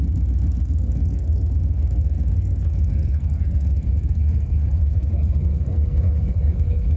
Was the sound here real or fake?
fake